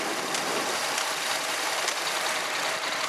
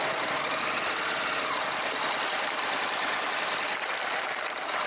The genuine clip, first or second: second